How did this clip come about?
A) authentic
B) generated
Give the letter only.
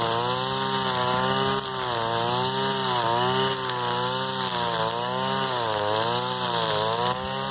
A